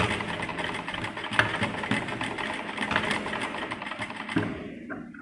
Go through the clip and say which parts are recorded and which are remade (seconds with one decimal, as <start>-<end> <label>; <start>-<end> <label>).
0.0-5.2 recorded

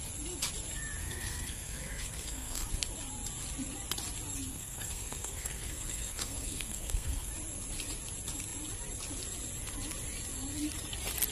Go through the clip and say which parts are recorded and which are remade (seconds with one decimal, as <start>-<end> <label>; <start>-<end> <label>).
0.0-1.0 recorded; 1.0-2.7 remade; 2.7-4.5 recorded; 4.5-7.3 remade; 7.3-11.3 recorded

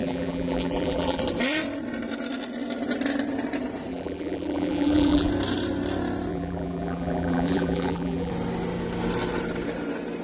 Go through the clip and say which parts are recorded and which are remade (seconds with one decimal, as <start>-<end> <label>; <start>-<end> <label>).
0.0-1.2 remade; 1.2-3.9 recorded; 3.9-5.3 remade; 5.3-6.3 recorded; 6.3-8.3 remade; 8.3-10.2 recorded